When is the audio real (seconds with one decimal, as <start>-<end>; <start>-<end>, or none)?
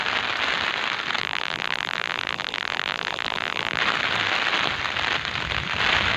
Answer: 0.0-1.2; 3.8-6.2